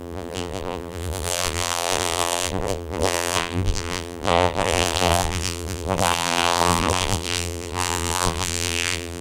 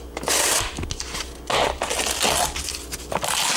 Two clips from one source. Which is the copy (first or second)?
first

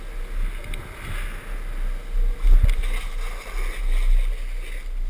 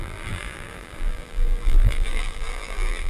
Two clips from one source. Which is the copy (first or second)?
second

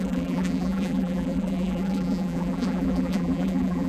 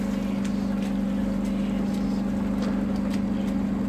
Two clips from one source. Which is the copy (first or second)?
first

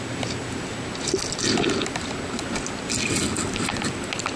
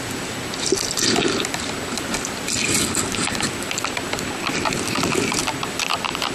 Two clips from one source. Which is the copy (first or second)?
second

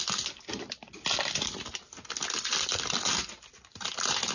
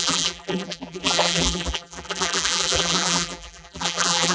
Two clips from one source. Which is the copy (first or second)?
second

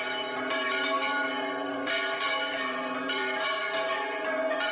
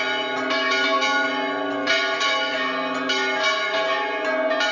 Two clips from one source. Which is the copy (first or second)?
first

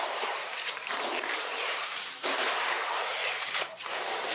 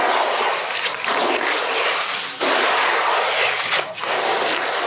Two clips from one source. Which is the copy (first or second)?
first